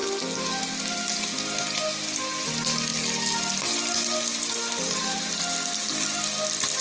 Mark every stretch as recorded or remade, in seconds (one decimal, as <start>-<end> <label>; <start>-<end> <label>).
0.0-6.8 recorded